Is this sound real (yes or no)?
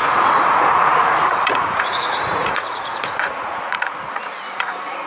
no